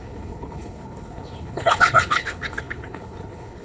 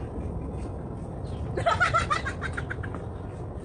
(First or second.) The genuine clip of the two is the second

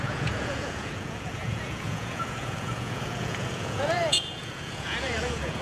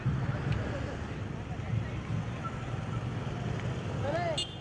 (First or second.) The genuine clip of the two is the second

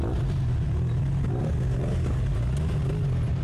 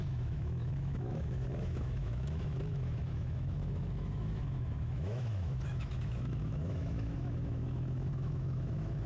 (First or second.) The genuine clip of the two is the first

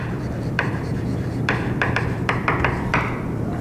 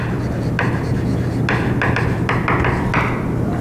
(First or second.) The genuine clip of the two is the second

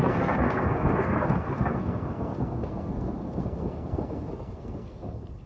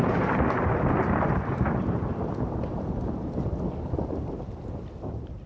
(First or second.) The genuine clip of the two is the second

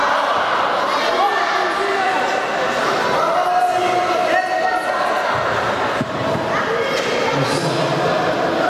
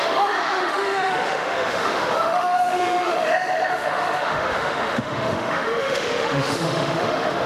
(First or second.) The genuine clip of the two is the first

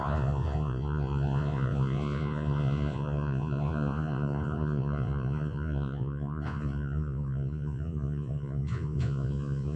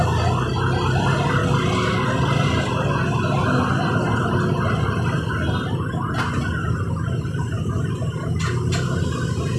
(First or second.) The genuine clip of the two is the second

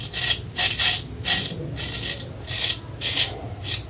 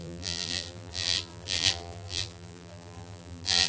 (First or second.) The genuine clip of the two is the first